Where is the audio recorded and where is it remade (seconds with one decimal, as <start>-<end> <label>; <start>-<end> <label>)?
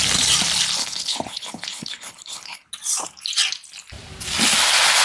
0.0-0.8 recorded; 0.8-2.7 remade; 2.7-5.0 recorded